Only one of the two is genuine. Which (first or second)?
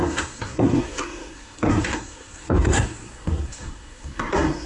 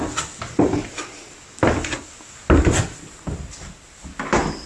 second